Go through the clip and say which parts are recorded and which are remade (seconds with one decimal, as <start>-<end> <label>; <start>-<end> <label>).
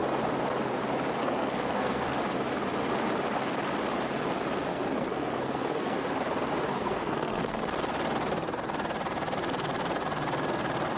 0.0-1.2 recorded; 1.2-2.2 remade; 2.2-4.7 recorded; 4.7-6.0 remade; 6.0-6.7 recorded; 6.7-7.6 remade; 7.6-11.0 recorded